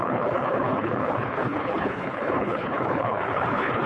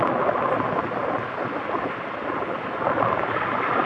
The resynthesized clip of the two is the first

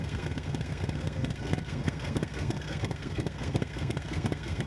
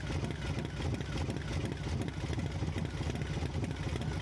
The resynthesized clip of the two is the first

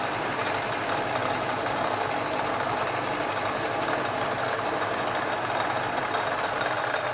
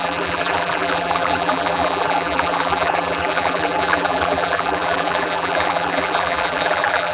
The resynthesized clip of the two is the second